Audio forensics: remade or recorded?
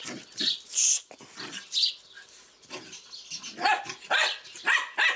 recorded